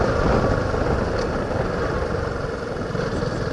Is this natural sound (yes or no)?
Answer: yes